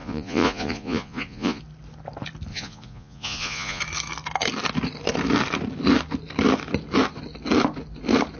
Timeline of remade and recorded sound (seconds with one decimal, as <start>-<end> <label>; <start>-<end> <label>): 0.0-1.6 remade; 1.6-2.5 recorded; 2.5-3.8 remade; 3.8-8.4 recorded